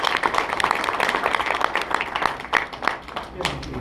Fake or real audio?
real